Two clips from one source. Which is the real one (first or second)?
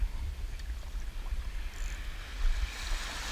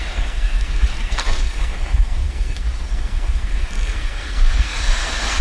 first